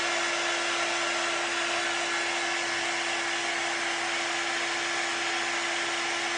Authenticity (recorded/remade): recorded